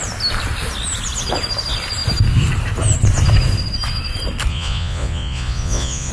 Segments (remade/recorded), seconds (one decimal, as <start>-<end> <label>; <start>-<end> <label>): 0.0-4.5 recorded; 4.5-6.1 remade